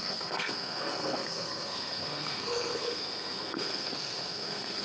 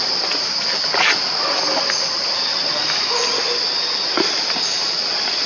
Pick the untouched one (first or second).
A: second